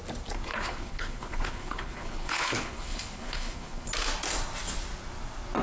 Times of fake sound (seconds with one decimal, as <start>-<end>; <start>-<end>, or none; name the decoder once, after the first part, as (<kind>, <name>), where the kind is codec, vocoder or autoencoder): 0.5-3.9 (codec, HILCodec)